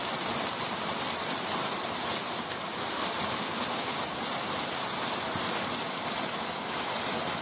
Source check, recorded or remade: recorded